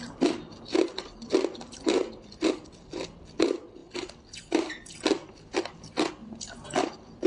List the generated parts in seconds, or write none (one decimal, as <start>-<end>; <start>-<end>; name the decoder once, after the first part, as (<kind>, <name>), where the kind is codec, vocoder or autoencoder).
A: none